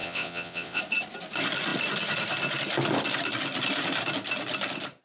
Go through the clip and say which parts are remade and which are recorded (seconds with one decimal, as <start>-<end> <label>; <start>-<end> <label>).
0.0-0.8 remade; 0.8-5.0 recorded